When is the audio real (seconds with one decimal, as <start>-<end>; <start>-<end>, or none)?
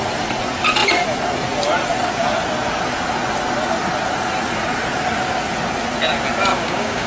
0.0-6.5